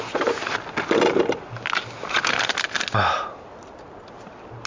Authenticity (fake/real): real